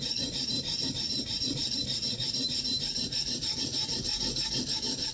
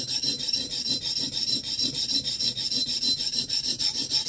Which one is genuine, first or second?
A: second